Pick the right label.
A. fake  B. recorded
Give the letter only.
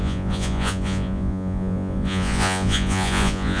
A